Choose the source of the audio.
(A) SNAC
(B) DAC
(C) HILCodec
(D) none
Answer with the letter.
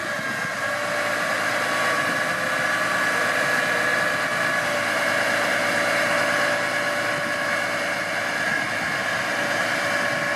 D